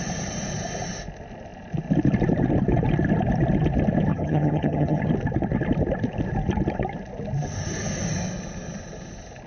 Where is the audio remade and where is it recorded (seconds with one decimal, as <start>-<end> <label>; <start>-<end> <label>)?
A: 0.0-4.1 recorded; 4.1-5.0 remade; 5.0-9.5 recorded